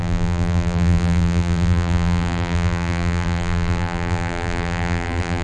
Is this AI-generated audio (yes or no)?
yes